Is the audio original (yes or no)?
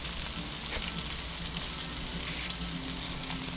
yes